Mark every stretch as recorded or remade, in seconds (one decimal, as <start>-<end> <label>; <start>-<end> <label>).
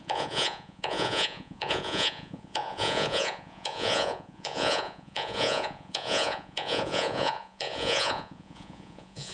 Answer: 0.0-9.3 remade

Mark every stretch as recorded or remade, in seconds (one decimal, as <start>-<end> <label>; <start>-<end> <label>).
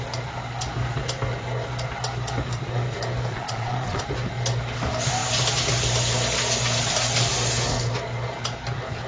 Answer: 0.0-3.3 recorded; 3.3-4.0 remade; 4.0-9.1 recorded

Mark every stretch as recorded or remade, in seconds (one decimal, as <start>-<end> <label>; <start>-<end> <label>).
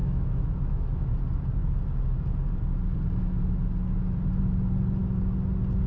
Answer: 0.0-1.2 remade; 1.2-5.9 recorded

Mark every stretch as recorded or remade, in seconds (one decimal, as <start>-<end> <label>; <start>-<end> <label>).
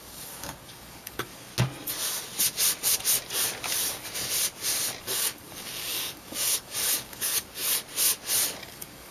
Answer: 0.0-1.5 remade; 1.5-5.0 recorded; 5.0-7.6 remade; 7.6-8.6 recorded; 8.6-9.1 remade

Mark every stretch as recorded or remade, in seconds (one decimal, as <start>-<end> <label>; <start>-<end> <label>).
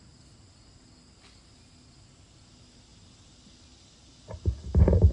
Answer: 0.0-5.1 recorded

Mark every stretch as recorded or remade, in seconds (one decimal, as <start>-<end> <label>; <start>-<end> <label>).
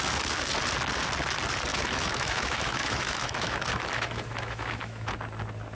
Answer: 0.0-1.7 recorded; 1.7-5.1 remade; 5.1-5.7 recorded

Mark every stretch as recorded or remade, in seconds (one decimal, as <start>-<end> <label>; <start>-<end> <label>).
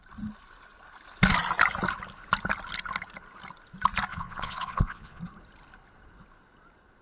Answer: 0.0-4.1 recorded; 4.1-5.2 remade; 5.2-7.0 recorded